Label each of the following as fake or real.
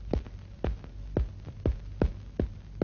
real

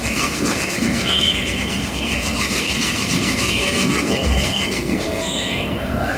fake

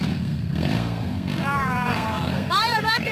fake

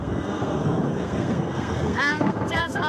fake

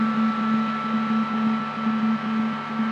real